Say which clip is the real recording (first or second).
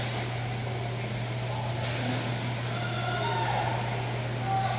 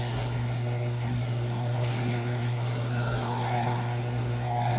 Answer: first